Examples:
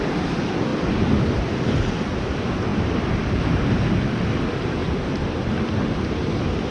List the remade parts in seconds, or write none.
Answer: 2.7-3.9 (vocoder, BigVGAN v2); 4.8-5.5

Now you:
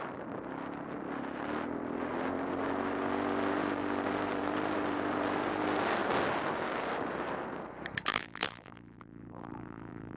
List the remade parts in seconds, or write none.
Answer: 8.1-10.2 (vocoder, BigVGAN v2)

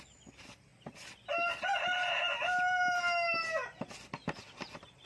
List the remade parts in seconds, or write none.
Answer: none